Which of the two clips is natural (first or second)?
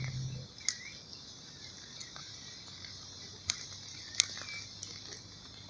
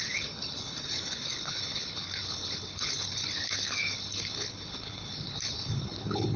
first